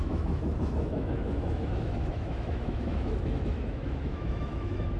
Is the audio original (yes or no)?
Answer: no